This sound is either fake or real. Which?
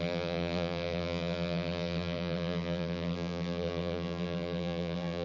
fake